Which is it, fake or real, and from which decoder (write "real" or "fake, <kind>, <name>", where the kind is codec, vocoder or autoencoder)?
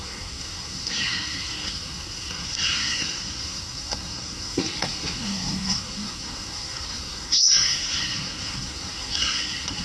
fake, codec, SNAC